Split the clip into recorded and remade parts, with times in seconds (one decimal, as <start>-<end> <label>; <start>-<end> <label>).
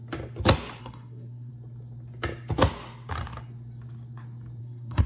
0.0-0.8 recorded; 0.8-1.5 remade; 1.5-4.6 recorded; 4.6-5.1 remade